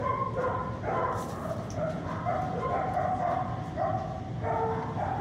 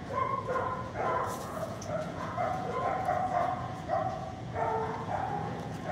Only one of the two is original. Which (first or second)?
first